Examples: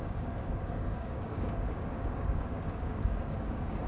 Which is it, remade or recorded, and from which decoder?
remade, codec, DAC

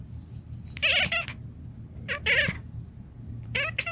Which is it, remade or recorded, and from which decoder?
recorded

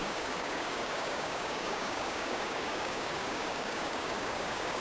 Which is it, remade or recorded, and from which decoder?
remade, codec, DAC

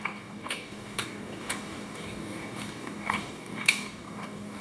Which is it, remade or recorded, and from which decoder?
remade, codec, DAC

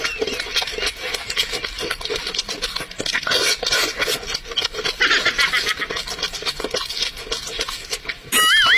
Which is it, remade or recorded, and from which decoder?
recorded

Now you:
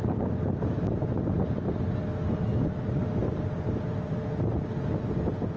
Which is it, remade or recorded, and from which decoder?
recorded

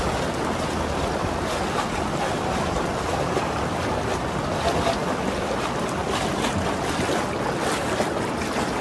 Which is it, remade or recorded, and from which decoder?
recorded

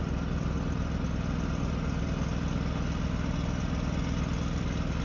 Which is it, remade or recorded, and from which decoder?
recorded